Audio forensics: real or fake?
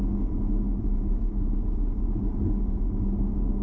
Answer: real